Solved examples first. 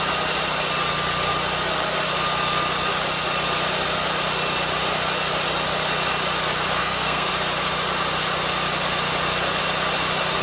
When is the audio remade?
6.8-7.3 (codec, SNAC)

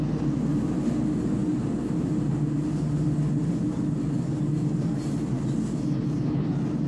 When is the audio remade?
none

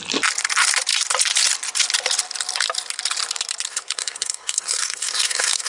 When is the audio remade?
3.7-5.7 (codec, SNAC)

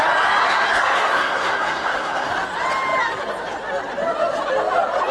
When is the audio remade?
0.4-2.3 (codec, SNAC)

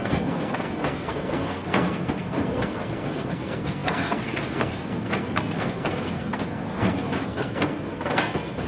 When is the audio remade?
0.0-8.7 (codec, SNAC)

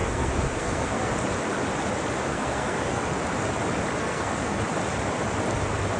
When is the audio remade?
0.0-1.1 (codec, SNAC); 2.3-3.0; 4.0-4.6